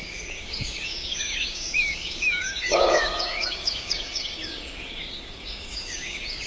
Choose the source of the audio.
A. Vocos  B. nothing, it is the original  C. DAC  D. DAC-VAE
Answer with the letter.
C